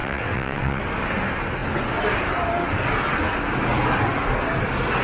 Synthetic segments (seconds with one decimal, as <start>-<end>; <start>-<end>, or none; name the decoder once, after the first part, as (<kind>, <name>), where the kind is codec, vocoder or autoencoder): 0.0-0.8 (vocoder, WaveNeXt)

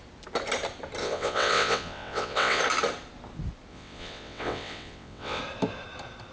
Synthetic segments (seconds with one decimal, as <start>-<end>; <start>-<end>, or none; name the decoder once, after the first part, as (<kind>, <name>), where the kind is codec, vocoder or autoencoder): 1.0-2.6 (vocoder, WaveNeXt); 3.7-5.4

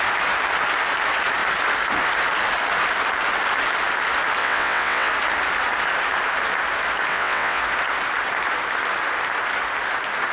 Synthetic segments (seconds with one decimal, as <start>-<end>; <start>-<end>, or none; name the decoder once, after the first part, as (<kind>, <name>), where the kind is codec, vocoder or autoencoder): 4.4-5.1 (vocoder, WaveNeXt); 7.1-7.6

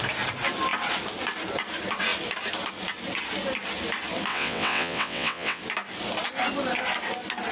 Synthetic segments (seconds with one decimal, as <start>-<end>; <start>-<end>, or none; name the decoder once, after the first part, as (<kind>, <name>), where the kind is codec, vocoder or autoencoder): 4.3-5.6 (vocoder, WaveNeXt)

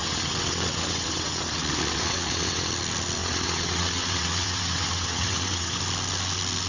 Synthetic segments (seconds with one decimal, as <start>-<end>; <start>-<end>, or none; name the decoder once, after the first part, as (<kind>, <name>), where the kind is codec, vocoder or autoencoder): 0.0-2.7 (vocoder, WaveNeXt); 3.2-5.8

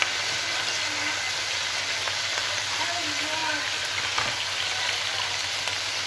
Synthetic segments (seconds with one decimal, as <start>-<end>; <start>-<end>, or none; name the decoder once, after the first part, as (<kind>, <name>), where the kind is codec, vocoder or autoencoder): none

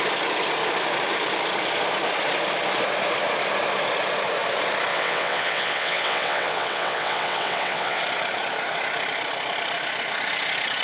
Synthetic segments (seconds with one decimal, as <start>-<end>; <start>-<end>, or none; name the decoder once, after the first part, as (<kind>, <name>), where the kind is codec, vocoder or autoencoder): 4.9-8.0 (vocoder, WaveNeXt)

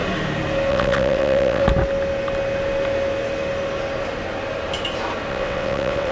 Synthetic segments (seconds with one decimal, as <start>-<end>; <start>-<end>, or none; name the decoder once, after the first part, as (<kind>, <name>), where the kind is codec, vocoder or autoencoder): 0.7-1.6 (vocoder, WaveNeXt); 5.3-6.1